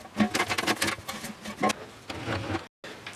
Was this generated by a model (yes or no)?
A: no